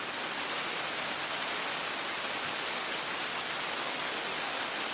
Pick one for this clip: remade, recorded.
recorded